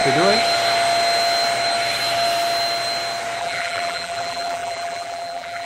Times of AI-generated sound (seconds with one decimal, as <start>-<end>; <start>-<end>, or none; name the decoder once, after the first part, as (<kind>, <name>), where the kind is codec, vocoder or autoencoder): 3.4-5.7 (vocoder, BigVGAN v2)